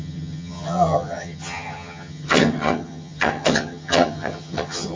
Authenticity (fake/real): fake